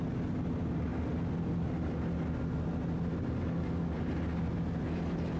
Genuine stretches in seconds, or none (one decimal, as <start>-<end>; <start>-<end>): 0.0-5.4